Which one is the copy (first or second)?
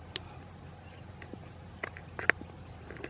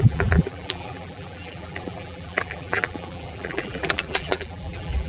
second